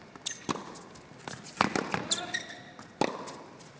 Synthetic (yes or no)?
no